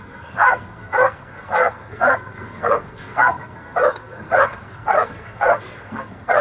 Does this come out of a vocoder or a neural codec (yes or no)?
yes